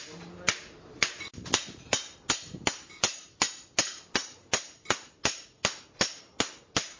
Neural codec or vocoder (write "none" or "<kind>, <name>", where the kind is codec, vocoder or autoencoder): none